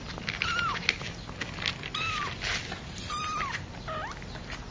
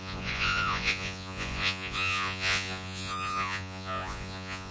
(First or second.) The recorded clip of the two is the first